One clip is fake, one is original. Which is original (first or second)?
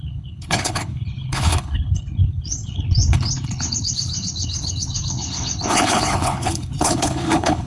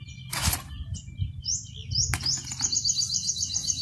second